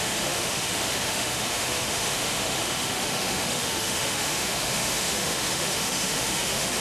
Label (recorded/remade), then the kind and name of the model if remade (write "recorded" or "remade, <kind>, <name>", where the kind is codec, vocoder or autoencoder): remade, autoencoder, DAC-VAE